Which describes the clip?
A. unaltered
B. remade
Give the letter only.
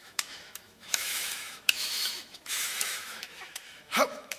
B